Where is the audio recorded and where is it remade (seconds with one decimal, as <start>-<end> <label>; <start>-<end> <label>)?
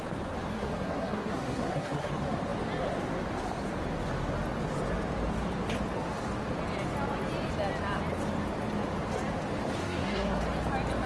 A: 0.0-0.5 recorded; 0.5-2.1 remade; 2.1-9.8 recorded; 9.8-10.4 remade; 10.4-11.1 recorded